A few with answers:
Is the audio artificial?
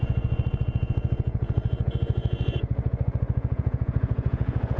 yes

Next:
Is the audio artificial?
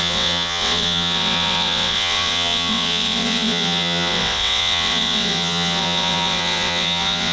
yes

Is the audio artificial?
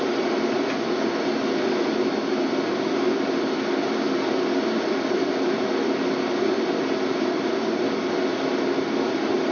no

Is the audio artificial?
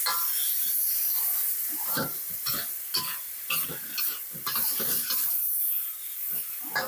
no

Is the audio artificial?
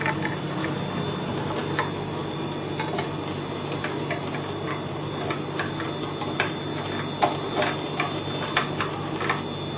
no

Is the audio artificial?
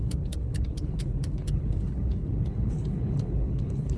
yes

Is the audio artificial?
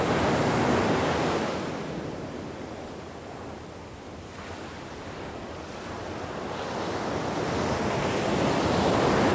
no